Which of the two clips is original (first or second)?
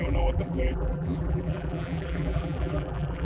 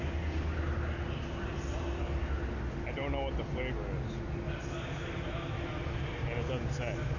second